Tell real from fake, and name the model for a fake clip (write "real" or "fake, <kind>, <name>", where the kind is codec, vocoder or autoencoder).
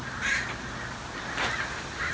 fake, vocoder, BigVGAN v2